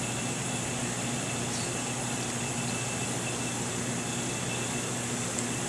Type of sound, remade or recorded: recorded